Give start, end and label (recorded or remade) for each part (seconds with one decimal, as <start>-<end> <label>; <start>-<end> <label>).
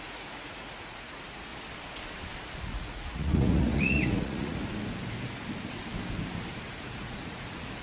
0.0-1.5 remade; 1.5-2.6 recorded; 2.6-4.6 remade; 4.6-6.7 recorded; 6.7-7.8 remade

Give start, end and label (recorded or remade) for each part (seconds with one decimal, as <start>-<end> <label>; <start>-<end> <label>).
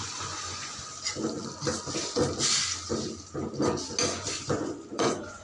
0.0-0.8 remade; 0.8-4.0 recorded; 4.0-5.4 remade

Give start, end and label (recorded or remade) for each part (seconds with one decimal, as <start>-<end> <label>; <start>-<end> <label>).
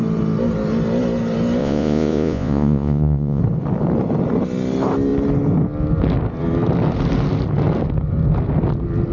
0.0-1.6 recorded; 1.6-3.4 remade; 3.4-9.1 recorded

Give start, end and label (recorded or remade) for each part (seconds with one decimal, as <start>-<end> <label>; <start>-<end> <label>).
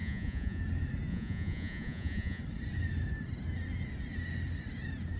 0.0-0.6 remade; 0.6-1.1 recorded; 1.1-2.4 remade; 2.4-5.2 recorded